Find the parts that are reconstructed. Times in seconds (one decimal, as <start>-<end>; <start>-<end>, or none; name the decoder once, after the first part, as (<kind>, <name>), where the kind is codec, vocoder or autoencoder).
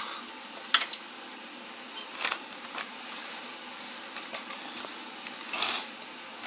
2.1-6.0 (vocoder, BigVGAN v2)